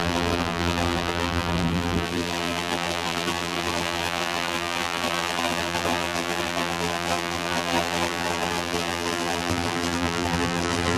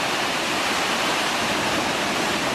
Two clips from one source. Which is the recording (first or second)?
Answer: second